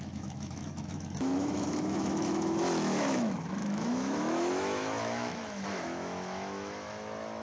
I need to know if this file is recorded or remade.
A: remade